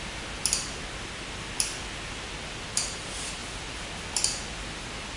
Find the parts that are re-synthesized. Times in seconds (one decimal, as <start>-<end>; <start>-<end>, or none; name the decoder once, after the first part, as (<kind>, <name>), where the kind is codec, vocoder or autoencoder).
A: none